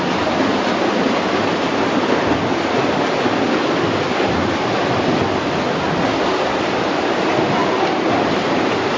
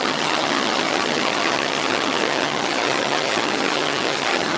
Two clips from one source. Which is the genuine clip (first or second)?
first